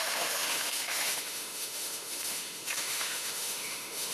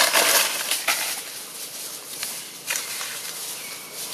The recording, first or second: second